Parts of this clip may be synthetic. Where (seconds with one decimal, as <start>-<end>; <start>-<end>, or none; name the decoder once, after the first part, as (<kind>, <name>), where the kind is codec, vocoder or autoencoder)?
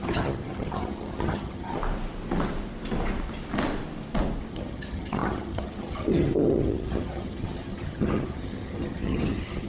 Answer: 0.0-1.8 (vocoder, HiFi-GAN); 4.5-9.7